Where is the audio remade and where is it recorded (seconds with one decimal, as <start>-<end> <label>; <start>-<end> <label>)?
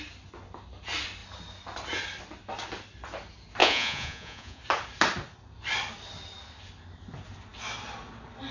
0.0-3.6 recorded; 3.6-4.6 remade; 4.6-8.5 recorded